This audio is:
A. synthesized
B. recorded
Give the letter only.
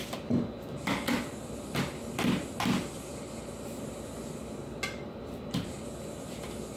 B